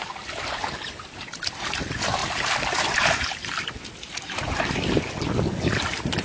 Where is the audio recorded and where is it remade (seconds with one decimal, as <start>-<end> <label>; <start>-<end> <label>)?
0.0-6.2 recorded